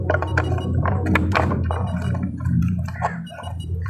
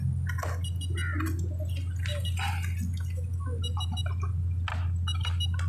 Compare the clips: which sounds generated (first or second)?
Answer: first